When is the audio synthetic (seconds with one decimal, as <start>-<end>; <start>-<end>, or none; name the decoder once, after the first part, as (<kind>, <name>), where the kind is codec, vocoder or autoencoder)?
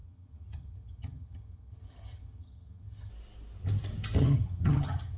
0.0-3.1 (vocoder, HiFi-GAN); 4.2-5.2